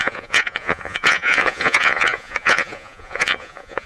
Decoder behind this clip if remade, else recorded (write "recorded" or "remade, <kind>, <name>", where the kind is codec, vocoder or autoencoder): remade, vocoder, Vocos